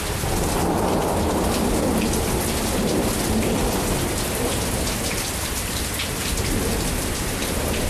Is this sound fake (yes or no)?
yes